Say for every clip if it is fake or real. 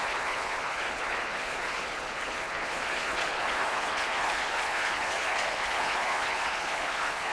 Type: fake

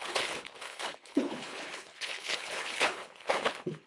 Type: fake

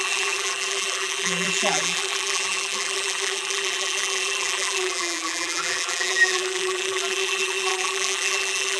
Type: fake